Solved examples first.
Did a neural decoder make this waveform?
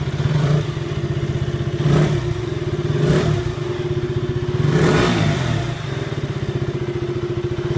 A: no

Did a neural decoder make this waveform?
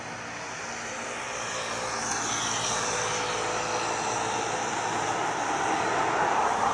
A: no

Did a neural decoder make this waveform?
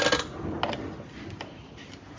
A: no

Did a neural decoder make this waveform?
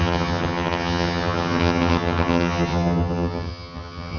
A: yes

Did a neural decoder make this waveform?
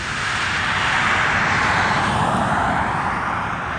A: no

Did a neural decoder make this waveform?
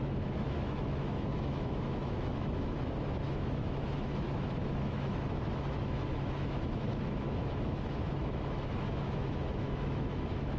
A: yes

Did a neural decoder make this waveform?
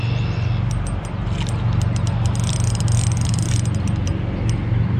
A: no